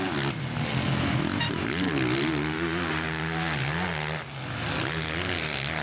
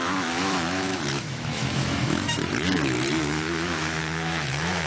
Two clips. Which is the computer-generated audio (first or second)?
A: second